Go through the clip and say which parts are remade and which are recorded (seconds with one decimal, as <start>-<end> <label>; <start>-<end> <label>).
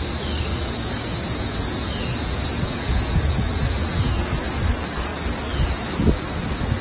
0.0-0.5 recorded; 0.5-4.6 remade; 4.6-6.8 recorded